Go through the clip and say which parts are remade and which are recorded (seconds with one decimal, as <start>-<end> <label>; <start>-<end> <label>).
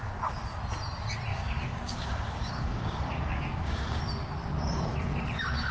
0.0-1.3 recorded; 1.3-4.0 remade; 4.0-5.7 recorded